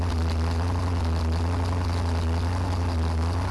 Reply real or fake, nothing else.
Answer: real